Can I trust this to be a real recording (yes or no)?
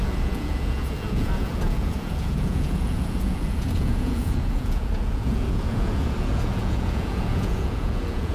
no